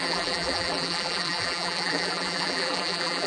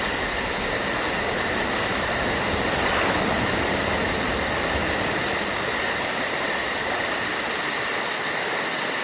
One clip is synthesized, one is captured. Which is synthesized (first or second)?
first